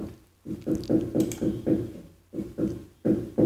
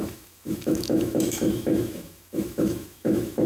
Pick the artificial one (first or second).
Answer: second